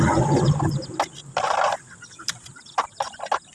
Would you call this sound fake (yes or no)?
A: no